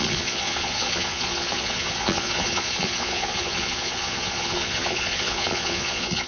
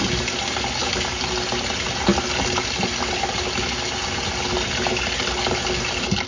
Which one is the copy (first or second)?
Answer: first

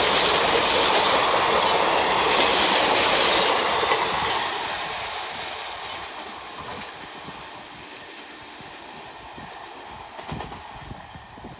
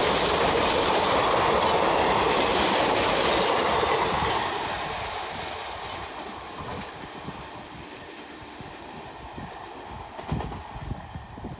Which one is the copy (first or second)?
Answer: second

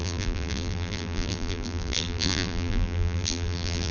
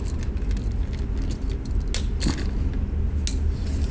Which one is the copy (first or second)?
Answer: first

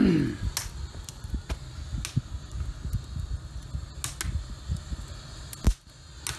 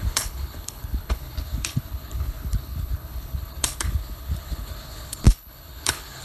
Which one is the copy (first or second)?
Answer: second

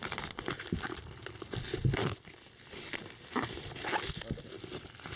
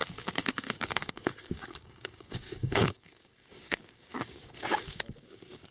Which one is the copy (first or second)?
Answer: second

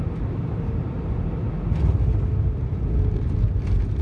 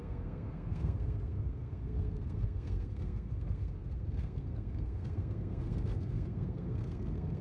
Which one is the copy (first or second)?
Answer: second